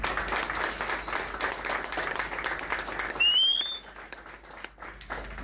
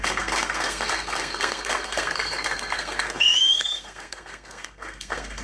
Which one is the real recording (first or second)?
first